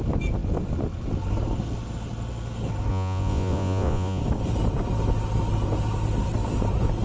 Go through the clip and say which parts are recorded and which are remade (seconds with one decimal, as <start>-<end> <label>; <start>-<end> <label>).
0.0-2.9 recorded; 2.9-4.2 remade; 4.2-7.0 recorded